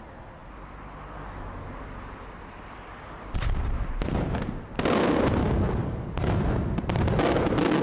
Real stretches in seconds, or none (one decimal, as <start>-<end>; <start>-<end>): 0.0-5.4; 6.1-7.8